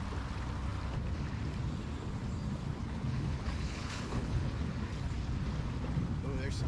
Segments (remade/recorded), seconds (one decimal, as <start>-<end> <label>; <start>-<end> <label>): 0.0-2.8 recorded; 2.8-4.5 remade; 4.5-6.7 recorded